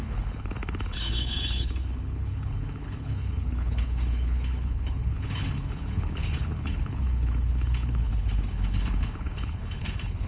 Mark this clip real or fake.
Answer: fake